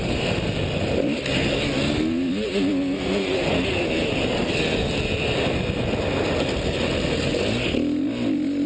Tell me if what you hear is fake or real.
real